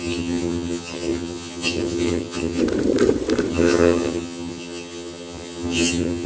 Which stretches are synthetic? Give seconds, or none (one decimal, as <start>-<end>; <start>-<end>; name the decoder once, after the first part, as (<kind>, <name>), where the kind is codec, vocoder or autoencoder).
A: 0.0-2.6 (vocoder, HiFi-GAN); 3.5-6.3